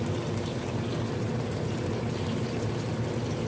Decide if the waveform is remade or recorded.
recorded